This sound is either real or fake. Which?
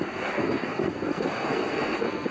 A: fake